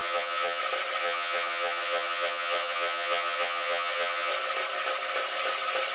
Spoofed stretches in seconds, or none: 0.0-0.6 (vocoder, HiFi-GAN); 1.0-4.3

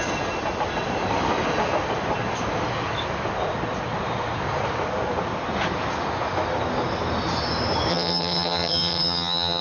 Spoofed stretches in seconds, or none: 7.9-9.6 (vocoder, HiFi-GAN)

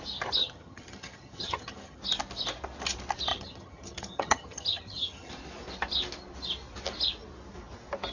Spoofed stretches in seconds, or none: 0.4-2.0 (vocoder, HiFi-GAN); 3.3-5.3

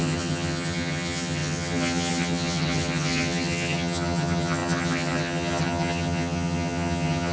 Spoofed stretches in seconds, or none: 0.0-7.3 (vocoder, HiFi-GAN)

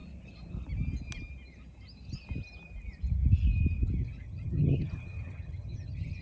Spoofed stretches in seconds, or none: 4.0-6.2 (vocoder, HiFi-GAN)

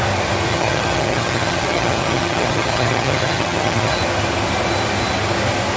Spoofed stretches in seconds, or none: 0.5-4.0 (vocoder, HiFi-GAN)

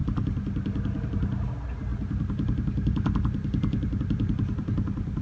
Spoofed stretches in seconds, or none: none

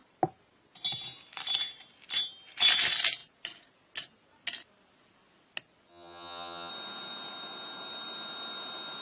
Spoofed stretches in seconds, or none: 5.9-6.7 (vocoder, HiFi-GAN)